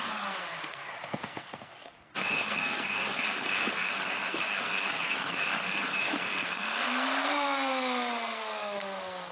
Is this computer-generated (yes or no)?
yes